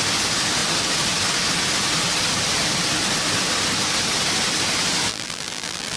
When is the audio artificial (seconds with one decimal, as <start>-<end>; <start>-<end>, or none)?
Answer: 5.1-6.0